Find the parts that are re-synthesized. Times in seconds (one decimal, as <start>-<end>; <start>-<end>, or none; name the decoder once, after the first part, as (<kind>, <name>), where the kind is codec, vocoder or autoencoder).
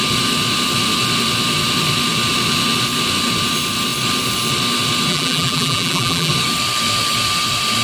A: 5.1-6.3 (vocoder, BigVGAN v2)